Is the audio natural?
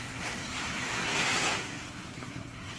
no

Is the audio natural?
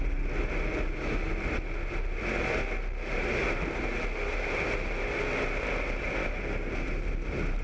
yes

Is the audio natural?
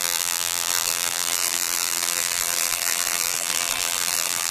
no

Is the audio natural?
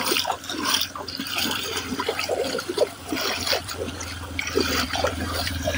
no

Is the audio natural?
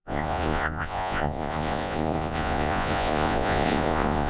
no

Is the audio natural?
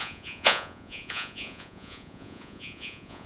no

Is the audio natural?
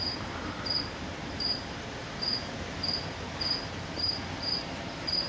no